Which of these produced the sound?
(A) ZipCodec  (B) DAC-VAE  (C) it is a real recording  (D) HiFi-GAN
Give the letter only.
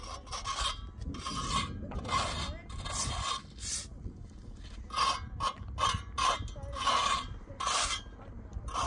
C